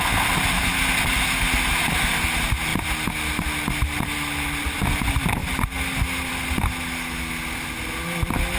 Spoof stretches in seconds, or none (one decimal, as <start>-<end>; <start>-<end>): none